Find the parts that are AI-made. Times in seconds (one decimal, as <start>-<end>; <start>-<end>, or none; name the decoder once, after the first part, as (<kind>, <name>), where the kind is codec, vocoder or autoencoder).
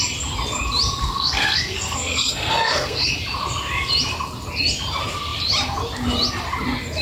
1.0-3.1 (codec, SNAC)